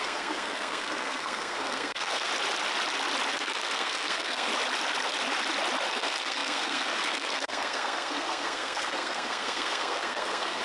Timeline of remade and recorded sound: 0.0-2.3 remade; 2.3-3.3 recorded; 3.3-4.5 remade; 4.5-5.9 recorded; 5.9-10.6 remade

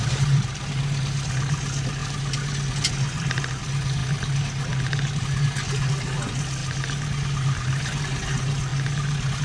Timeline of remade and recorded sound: 0.0-9.4 recorded

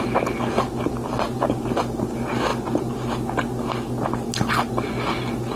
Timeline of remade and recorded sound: 0.0-5.6 recorded

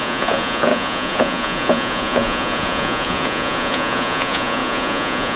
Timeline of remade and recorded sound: 0.0-5.4 remade

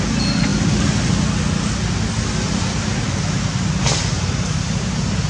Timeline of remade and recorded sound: 0.0-5.3 recorded